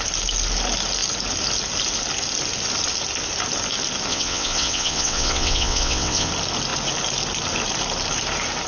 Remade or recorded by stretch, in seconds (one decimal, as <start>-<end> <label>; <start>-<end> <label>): 0.0-4.1 recorded; 4.1-6.3 remade; 6.3-8.7 recorded